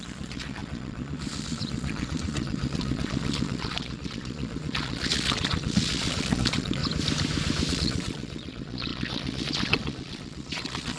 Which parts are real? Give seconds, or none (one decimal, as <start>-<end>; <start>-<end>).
6.8-7.7